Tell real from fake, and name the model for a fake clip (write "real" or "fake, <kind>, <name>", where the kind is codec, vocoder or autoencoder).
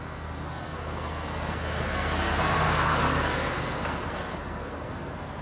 fake, codec, SNAC